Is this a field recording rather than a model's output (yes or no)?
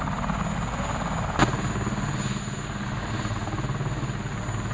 yes